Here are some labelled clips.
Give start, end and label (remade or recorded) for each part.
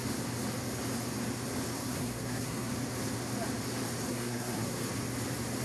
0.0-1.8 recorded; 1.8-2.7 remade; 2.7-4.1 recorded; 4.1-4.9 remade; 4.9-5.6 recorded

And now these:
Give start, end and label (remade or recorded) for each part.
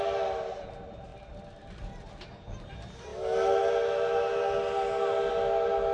0.0-5.9 recorded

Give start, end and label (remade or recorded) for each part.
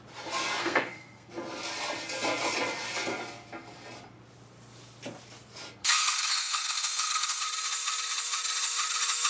0.0-0.6 recorded; 0.6-1.3 remade; 1.3-5.8 recorded; 5.8-7.4 remade; 7.4-9.3 recorded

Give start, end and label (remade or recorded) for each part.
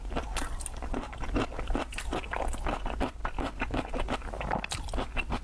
0.0-5.4 recorded